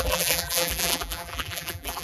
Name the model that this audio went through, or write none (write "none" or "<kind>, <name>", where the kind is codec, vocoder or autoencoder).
vocoder, BigVGAN v2